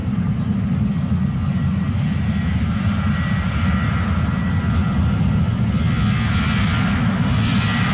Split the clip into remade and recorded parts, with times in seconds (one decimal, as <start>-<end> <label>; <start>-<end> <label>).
0.0-0.8 remade; 0.8-1.5 recorded; 1.5-4.6 remade; 4.6-7.9 recorded